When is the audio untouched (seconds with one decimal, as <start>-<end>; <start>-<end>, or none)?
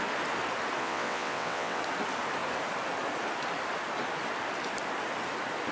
0.0-0.8; 1.8-5.7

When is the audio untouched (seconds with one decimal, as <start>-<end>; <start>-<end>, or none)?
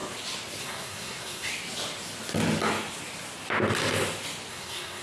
0.0-0.6; 1.5-4.5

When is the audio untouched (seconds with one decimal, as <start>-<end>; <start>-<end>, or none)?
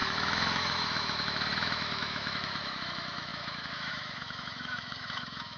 none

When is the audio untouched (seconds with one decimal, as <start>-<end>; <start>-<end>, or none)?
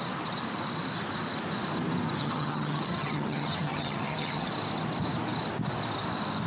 0.0-2.2; 4.5-6.5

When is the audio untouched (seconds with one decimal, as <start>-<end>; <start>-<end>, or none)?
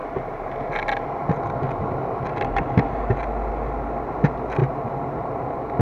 0.0-5.8